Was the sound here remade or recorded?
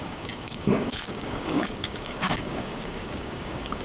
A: remade